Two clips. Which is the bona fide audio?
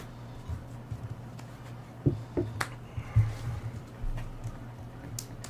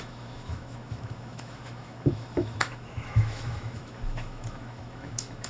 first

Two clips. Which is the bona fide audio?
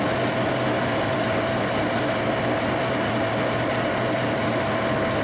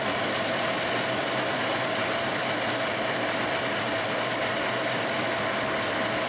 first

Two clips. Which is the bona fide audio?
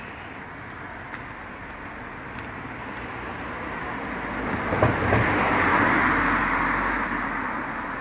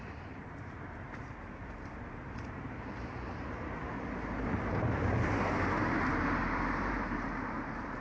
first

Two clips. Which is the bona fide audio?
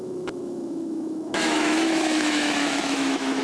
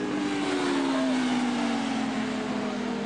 second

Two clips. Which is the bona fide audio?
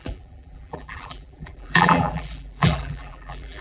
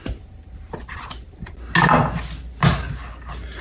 second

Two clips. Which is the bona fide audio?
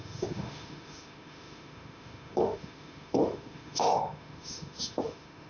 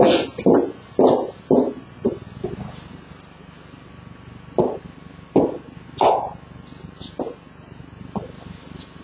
second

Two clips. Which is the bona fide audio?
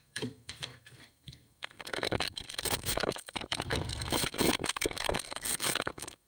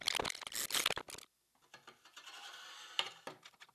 second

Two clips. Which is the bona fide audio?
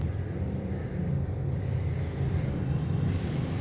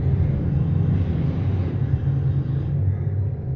second